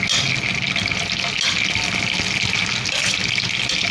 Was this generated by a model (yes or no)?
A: no